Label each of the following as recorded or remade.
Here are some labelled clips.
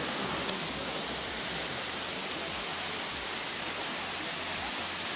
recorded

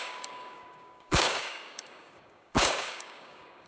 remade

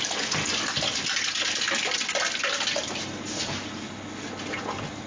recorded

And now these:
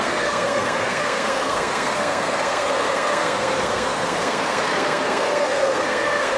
remade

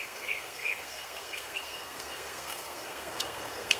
remade